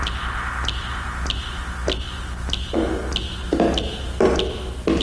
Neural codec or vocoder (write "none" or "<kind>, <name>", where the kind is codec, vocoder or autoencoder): none